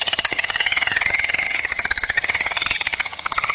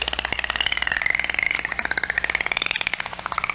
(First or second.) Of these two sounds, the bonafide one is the second